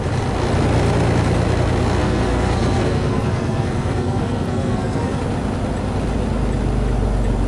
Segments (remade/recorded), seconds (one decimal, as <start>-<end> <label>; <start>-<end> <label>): 0.0-2.0 recorded; 2.0-5.2 remade; 5.2-7.5 recorded